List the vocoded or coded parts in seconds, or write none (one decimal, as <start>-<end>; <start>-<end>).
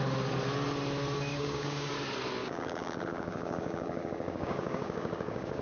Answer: 1.3-1.9; 2.4-5.6